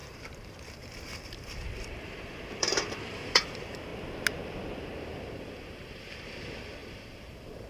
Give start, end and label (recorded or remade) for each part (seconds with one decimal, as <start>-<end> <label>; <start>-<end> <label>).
0.0-3.9 remade; 3.9-5.0 recorded; 5.0-7.7 remade